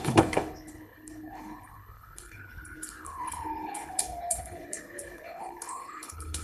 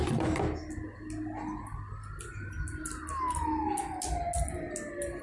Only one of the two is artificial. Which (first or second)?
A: first